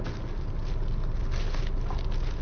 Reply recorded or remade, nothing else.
recorded